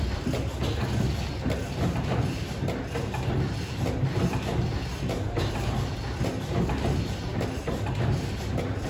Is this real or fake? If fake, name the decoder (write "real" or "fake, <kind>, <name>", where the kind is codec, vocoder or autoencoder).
real